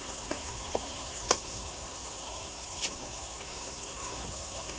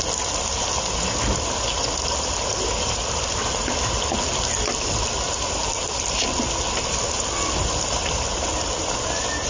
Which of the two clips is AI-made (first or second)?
first